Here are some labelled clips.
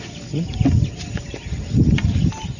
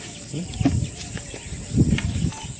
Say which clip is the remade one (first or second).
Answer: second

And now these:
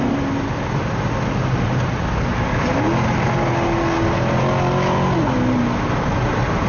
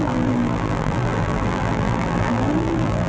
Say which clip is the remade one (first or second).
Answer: second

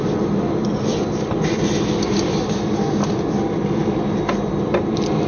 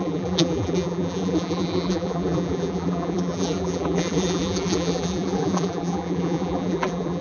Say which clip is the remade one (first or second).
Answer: second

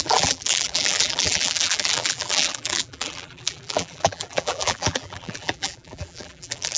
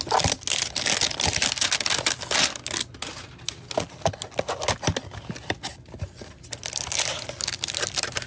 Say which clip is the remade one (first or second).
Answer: first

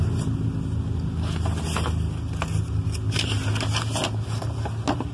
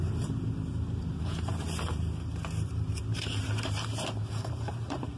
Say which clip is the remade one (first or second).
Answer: second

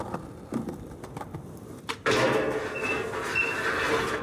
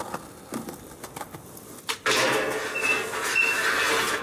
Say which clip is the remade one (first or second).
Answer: first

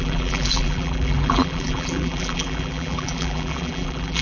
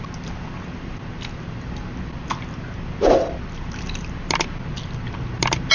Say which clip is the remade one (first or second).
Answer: first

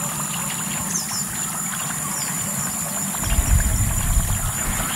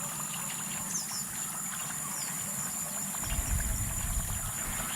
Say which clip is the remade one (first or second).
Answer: first